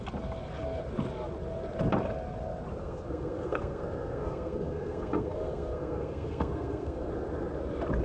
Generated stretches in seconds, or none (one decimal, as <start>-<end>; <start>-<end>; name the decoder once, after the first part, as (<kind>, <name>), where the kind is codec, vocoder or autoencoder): 2.8-7.1 (codec, SNAC)